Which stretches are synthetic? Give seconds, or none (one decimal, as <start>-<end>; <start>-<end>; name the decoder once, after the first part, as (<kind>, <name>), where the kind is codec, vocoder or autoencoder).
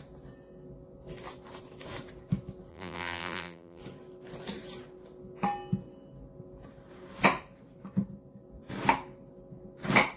2.7-3.8 (vocoder, BigVGAN v2)